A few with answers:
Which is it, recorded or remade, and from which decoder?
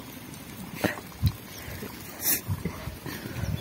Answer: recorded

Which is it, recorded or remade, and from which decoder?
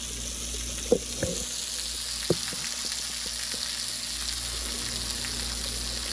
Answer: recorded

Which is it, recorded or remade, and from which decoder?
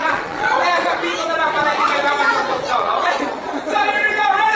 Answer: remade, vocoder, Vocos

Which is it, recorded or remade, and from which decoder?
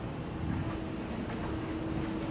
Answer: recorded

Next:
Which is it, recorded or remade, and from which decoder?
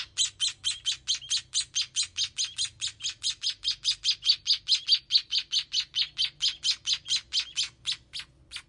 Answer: recorded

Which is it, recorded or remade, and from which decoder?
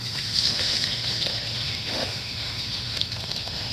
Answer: remade, autoencoder, DAC-VAE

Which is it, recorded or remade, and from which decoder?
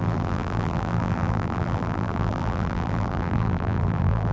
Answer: remade, vocoder, BigVGAN v2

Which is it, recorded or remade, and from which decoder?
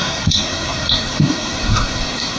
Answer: remade, codec, SNAC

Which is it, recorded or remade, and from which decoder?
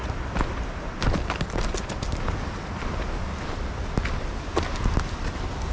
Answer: recorded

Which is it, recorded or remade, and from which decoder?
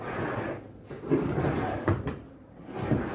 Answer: recorded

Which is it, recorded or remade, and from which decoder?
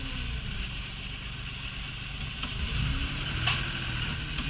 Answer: recorded